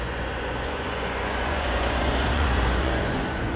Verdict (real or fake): fake